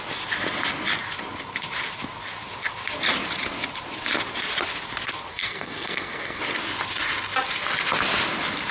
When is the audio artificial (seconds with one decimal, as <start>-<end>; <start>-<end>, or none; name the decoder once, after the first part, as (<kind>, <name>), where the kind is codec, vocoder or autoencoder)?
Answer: 5.3-6.4 (codec, SNAC)